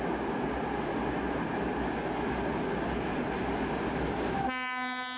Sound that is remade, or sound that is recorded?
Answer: recorded